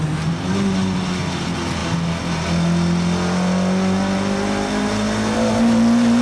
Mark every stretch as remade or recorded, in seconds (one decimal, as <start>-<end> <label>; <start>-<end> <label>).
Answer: 0.0-6.2 recorded